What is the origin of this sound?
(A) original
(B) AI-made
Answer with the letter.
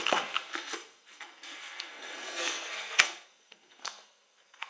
B